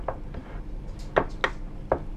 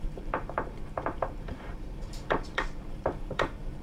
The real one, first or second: first